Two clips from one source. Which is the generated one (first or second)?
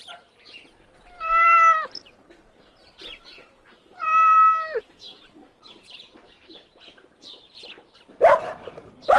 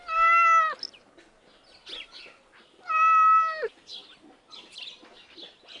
first